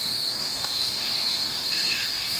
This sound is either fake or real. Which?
fake